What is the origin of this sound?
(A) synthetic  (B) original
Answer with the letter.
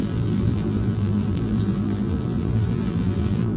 A